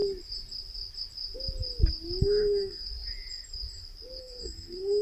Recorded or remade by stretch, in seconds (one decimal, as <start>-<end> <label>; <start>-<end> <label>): 0.0-2.2 recorded; 2.2-2.9 remade; 2.9-4.2 recorded; 4.2-5.0 remade